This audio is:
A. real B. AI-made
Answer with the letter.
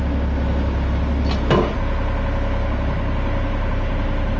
A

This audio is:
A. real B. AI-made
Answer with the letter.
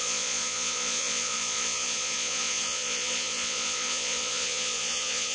B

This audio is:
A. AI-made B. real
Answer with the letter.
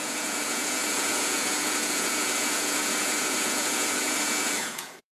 A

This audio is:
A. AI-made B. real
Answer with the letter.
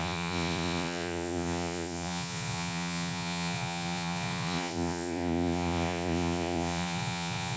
A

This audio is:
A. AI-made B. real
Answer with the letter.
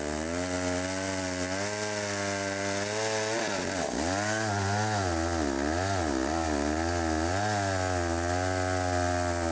B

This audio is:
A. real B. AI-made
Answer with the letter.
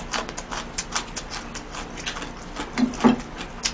A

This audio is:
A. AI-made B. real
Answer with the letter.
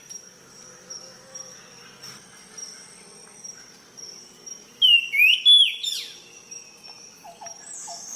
B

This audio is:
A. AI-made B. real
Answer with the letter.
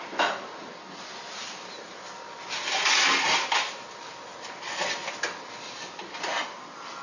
B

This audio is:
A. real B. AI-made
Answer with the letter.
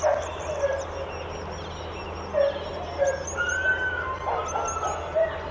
A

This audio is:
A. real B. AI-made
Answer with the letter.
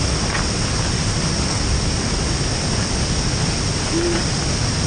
A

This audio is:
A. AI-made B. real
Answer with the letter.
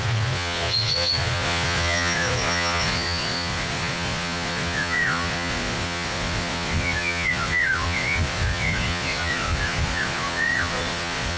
A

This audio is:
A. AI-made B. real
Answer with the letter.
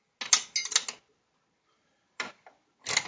B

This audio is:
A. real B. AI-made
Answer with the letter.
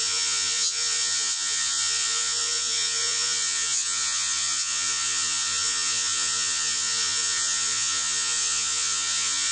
B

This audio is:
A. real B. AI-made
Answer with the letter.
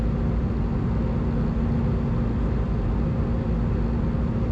A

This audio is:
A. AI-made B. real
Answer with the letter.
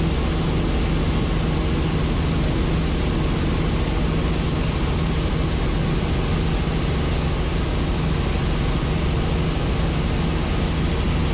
B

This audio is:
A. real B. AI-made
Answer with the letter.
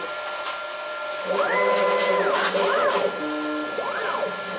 A